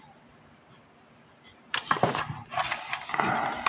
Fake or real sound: real